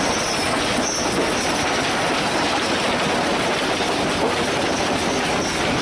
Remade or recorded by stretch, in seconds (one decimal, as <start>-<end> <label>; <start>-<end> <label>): 0.0-5.8 recorded